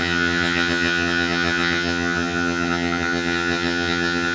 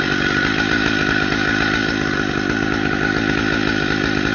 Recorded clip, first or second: second